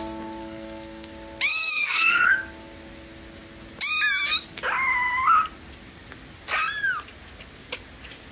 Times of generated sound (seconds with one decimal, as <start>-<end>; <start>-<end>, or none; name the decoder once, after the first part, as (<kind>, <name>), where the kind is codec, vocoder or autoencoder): 0.4-1.1 (codec, SNAC); 1.5-2.3